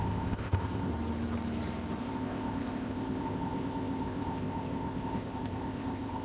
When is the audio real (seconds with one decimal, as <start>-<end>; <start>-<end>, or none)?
0.9-2.0